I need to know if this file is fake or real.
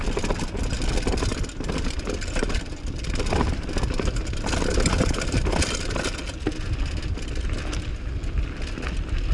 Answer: real